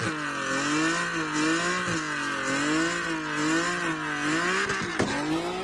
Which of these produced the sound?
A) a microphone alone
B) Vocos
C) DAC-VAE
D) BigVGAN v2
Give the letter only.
A